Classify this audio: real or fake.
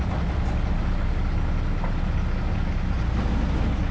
real